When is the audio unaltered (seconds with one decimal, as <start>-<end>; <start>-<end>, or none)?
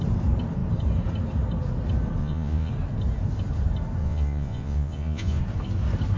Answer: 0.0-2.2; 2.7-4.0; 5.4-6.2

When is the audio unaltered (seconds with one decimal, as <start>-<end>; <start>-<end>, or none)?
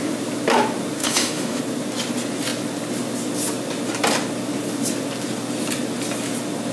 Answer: 0.0-1.0; 1.6-6.7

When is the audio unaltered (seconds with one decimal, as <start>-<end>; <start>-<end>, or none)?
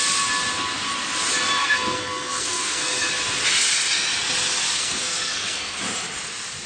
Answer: 0.0-1.6; 3.1-4.7; 5.8-6.7